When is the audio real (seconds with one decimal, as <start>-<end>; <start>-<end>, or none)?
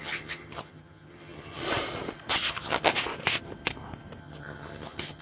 1.6-2.5; 2.9-4.2